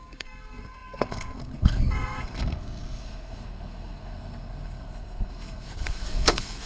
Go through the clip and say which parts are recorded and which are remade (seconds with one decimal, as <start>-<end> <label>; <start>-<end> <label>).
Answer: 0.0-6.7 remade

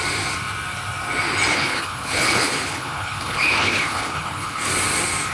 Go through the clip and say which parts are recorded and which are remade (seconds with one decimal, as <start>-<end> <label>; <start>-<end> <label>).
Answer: 0.0-1.5 recorded; 1.5-4.7 remade; 4.7-5.3 recorded

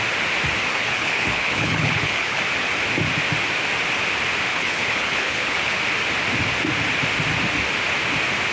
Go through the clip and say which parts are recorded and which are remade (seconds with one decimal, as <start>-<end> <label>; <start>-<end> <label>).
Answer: 0.0-0.7 recorded; 0.7-2.4 remade; 2.4-4.5 recorded; 4.5-5.8 remade; 5.8-8.5 recorded

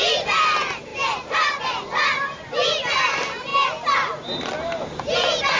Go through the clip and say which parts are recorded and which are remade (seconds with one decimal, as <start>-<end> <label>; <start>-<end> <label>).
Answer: 0.0-5.6 recorded